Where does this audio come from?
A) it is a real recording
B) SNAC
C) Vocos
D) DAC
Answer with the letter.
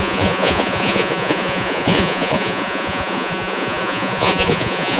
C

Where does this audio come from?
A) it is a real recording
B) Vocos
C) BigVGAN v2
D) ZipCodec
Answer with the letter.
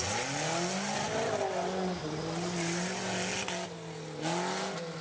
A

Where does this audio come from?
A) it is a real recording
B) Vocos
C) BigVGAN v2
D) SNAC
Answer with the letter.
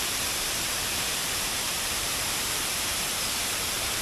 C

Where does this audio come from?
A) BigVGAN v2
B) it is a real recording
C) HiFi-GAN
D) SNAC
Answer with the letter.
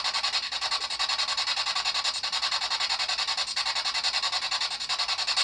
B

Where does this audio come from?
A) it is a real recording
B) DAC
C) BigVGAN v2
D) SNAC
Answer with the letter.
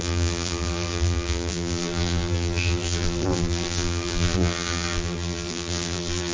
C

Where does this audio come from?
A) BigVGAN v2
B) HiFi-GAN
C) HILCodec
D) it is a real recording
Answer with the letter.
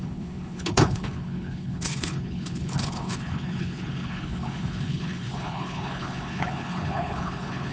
C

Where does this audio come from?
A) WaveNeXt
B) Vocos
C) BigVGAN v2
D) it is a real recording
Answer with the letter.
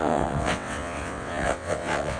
A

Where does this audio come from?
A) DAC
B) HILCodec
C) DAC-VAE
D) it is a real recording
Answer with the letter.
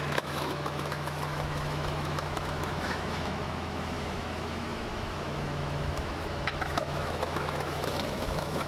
C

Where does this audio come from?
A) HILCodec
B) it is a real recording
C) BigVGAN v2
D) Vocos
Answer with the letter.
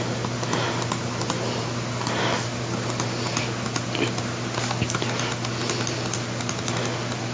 B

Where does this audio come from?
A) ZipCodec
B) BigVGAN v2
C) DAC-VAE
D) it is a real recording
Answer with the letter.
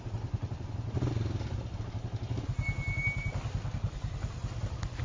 D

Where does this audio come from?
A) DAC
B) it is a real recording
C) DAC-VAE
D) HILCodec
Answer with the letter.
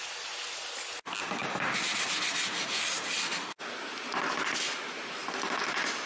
B